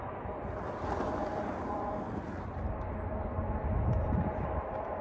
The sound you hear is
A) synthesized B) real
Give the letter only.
B